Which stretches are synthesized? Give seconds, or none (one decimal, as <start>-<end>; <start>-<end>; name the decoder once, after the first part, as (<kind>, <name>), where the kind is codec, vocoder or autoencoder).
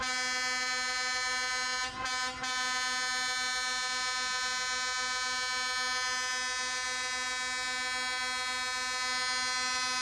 none